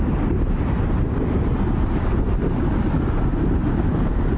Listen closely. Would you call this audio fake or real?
real